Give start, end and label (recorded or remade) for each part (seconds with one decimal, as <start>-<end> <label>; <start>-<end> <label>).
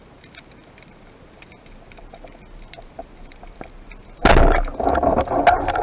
0.0-5.8 recorded